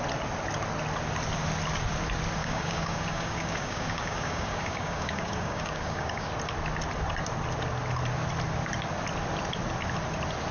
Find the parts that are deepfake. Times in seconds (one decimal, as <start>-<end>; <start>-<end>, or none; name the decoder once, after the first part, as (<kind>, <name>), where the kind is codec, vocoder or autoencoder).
2.4-6.3 (codec, DAC)

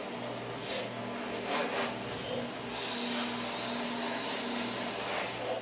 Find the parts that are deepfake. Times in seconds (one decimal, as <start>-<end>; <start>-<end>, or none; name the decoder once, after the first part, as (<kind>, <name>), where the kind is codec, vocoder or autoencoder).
none